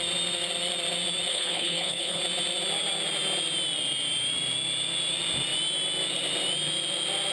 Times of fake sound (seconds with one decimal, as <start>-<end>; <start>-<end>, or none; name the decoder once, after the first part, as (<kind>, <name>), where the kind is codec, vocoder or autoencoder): 1.3-2.2 (codec, HILCodec)